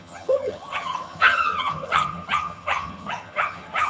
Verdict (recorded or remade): remade